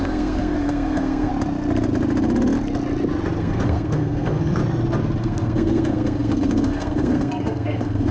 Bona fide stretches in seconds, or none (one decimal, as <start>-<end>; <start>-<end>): 1.3-3.4; 4.6-5.2